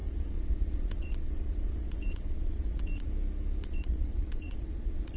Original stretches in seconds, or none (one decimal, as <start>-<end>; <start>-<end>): 3.1-3.6